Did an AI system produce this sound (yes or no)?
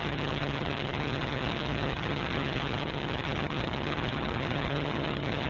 yes